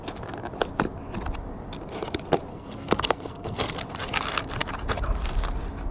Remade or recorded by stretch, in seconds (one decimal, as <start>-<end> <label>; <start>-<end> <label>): 0.0-2.5 recorded; 2.5-3.8 remade; 3.8-5.9 recorded

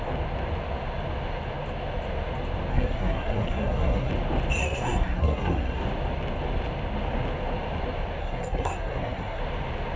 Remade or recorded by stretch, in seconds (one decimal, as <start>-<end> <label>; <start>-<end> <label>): 0.0-2.7 recorded; 2.7-4.1 remade; 4.1-4.6 recorded; 4.6-5.8 remade; 5.8-8.2 recorded; 8.2-9.4 remade; 9.4-10.0 recorded

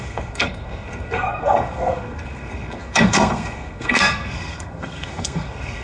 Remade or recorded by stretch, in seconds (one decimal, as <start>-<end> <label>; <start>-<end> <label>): 0.0-5.8 remade